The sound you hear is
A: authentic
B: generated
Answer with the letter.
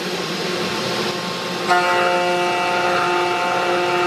A